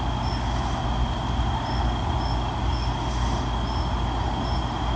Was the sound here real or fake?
real